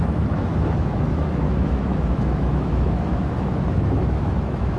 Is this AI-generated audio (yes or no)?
yes